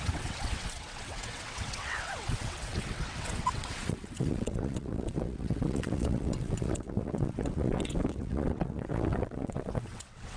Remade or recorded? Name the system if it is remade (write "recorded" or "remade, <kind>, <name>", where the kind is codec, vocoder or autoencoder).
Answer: remade, vocoder, WaveNeXt